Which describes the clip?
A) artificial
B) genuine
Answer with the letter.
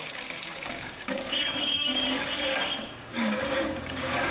A